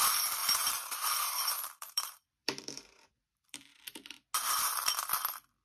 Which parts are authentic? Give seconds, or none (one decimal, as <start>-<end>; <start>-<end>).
0.0-0.4; 3.8-5.6